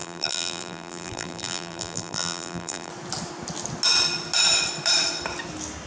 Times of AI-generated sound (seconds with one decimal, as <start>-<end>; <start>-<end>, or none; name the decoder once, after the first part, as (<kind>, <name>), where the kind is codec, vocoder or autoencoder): 0.0-2.9 (vocoder, BigVGAN v2)